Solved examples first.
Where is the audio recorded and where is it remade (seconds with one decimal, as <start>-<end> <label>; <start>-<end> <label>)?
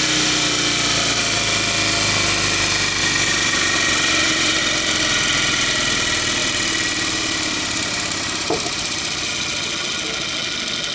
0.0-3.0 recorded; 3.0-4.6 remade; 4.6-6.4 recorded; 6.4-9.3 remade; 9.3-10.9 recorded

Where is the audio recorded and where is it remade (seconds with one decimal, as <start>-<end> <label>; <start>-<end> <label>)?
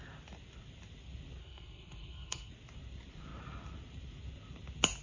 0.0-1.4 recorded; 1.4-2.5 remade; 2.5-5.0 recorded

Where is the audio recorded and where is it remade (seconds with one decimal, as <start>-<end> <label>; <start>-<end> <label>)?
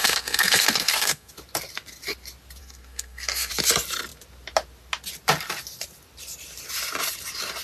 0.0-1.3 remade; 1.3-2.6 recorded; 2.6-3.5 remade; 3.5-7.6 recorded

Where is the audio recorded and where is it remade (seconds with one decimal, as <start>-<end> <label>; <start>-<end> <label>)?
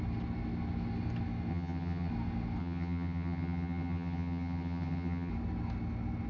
0.0-1.5 recorded; 1.5-2.1 remade; 2.1-2.6 recorded; 2.6-5.3 remade; 5.3-6.3 recorded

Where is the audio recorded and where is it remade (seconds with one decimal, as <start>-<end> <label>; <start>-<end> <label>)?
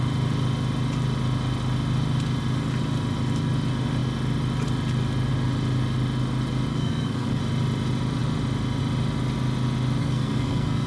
0.0-6.7 recorded; 6.7-7.4 remade; 7.4-10.0 recorded; 10.0-10.9 remade